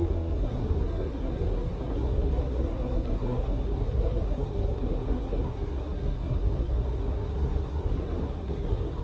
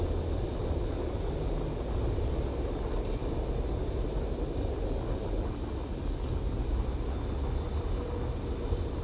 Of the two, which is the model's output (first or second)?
first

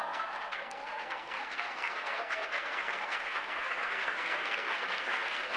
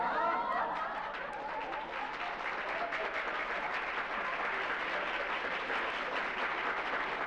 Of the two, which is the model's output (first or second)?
first